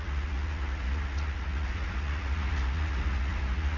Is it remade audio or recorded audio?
remade